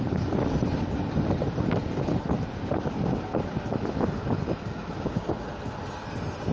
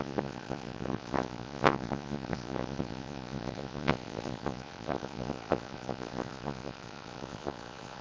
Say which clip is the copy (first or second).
second